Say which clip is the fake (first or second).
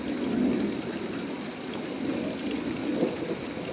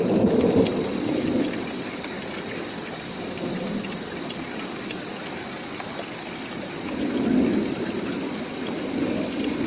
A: second